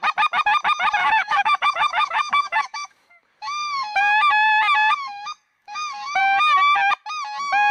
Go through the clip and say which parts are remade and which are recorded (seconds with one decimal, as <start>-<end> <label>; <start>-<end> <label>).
0.0-1.0 recorded; 1.0-4.0 remade; 4.0-4.9 recorded; 4.9-6.2 remade; 6.2-7.7 recorded